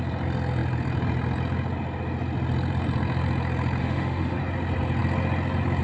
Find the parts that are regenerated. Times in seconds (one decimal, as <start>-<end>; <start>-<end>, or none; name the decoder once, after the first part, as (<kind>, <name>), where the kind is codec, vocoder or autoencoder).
3.8-4.4 (autoencoder, DAC-VAE)